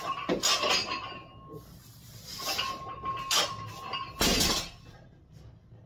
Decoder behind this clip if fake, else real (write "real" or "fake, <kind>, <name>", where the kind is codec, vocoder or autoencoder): real